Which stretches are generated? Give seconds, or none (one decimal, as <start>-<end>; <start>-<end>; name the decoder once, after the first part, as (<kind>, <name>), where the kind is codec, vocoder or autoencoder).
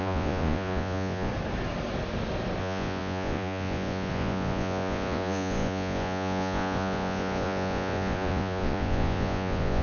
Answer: 0.0-1.3 (vocoder, Vocos); 2.6-9.8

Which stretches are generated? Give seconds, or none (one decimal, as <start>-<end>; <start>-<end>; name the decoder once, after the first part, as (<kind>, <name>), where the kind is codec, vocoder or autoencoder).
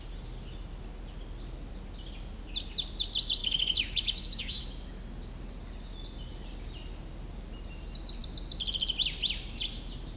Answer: 3.4-4.6 (autoencoder, DAC-VAE)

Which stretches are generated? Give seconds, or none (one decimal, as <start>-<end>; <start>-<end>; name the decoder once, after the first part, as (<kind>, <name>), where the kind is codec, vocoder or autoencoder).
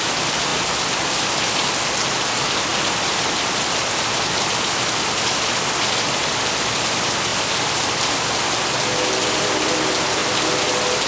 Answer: 2.7-6.3 (vocoder, BigVGAN v2); 7.3-8.4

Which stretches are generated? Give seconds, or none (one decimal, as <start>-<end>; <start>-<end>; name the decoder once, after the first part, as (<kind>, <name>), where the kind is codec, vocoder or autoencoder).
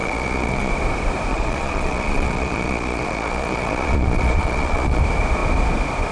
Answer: 0.0-0.7 (vocoder, Vocos); 1.3-5.0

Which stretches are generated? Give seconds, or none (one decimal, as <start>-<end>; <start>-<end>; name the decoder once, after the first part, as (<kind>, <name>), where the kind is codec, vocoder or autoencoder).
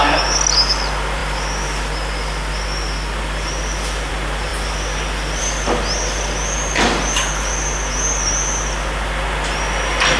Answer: none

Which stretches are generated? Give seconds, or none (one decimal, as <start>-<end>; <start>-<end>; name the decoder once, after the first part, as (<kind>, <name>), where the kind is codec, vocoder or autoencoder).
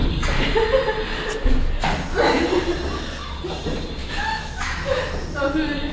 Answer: 4.0-5.0 (autoencoder, DAC-VAE)